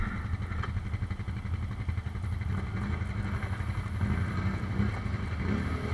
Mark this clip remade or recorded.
recorded